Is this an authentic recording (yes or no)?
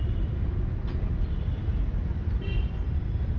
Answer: yes